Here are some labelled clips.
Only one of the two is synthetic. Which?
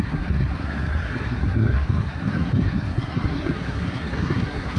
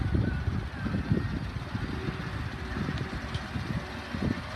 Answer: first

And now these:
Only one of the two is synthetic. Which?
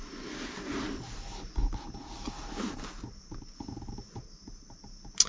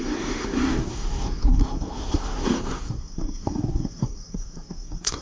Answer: second